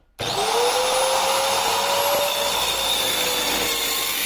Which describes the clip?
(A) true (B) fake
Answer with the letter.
A